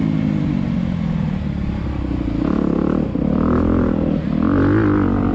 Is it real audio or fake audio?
real